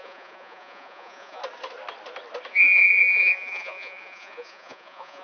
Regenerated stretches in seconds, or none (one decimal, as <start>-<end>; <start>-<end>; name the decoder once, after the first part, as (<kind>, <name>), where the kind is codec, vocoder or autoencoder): 0.0-1.4 (vocoder, Vocos); 2.5-5.2